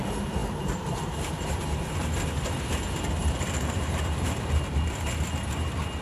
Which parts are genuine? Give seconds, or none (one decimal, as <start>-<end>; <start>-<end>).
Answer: 0.0-0.4; 1.8-3.2; 4.7-6.0